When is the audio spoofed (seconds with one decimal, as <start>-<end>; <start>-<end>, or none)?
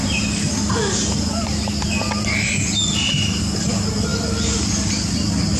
0.0-3.4; 4.1-4.7